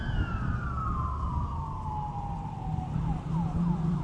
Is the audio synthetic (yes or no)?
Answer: yes